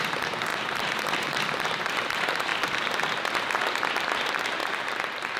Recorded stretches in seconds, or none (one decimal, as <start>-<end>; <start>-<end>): 2.5-3.9